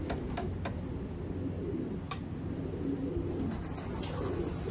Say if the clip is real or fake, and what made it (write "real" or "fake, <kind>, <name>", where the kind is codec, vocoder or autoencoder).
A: real